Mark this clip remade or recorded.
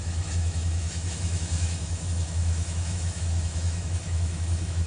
remade